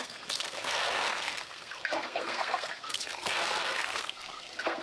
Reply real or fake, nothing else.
fake